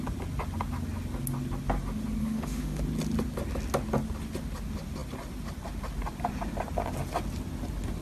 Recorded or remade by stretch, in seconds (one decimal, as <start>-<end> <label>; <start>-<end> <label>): 0.0-2.2 recorded; 2.2-2.8 remade; 2.8-8.0 recorded